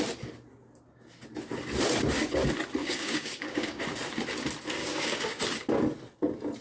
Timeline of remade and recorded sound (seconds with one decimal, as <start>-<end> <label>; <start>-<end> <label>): 0.0-2.8 recorded; 2.8-3.8 remade; 3.8-4.8 recorded; 4.8-5.4 remade; 5.4-6.6 recorded